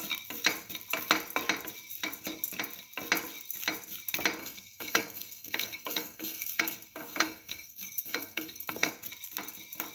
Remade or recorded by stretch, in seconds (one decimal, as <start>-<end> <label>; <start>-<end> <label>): 0.0-4.4 recorded; 4.4-8.9 remade; 8.9-9.9 recorded